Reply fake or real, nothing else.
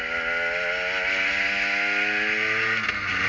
real